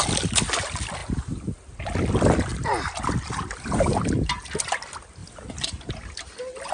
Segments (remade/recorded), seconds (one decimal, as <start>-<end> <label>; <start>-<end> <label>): 0.0-2.5 recorded; 2.5-4.4 remade; 4.4-5.2 recorded; 5.2-5.9 remade; 5.9-6.7 recorded